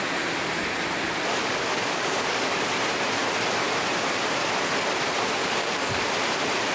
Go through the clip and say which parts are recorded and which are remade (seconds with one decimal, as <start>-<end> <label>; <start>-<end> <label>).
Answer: 0.0-1.4 recorded; 1.4-2.7 remade; 2.7-5.4 recorded; 5.4-6.0 remade; 6.0-6.7 recorded